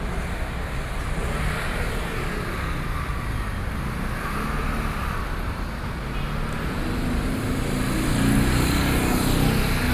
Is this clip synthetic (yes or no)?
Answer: no